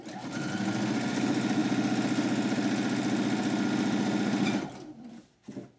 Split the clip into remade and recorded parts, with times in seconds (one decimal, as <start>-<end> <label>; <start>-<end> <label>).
0.0-5.8 recorded